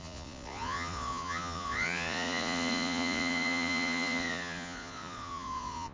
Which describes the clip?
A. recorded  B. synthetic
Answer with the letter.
B